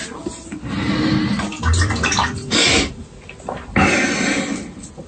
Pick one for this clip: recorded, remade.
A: recorded